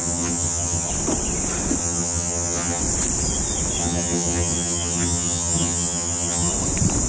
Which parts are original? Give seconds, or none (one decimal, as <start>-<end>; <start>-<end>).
0.9-1.8; 2.8-3.8; 6.5-7.1